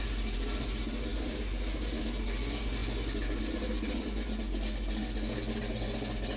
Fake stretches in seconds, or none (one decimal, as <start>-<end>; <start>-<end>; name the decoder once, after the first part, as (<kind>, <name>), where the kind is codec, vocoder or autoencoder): none